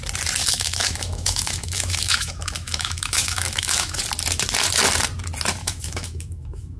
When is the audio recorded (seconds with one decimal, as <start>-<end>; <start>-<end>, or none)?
0.0-0.4; 4.0-5.6